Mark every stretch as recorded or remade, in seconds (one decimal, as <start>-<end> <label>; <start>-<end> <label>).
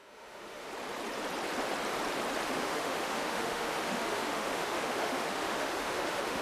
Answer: 0.0-0.7 remade; 0.7-2.4 recorded; 2.4-6.4 remade